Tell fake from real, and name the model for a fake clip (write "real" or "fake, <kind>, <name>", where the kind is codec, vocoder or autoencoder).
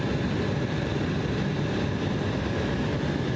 real